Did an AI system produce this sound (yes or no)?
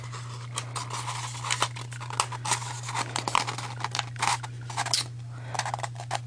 no